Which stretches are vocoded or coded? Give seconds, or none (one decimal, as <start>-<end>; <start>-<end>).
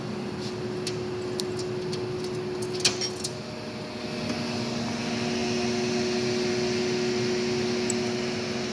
none